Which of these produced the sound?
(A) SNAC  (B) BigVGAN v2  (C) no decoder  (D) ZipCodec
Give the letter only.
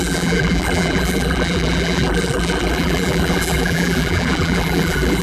B